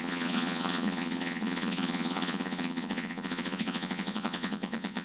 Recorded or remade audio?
remade